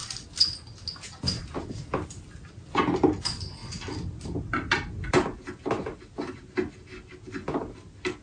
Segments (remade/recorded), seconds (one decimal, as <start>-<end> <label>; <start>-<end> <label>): 0.0-8.2 recorded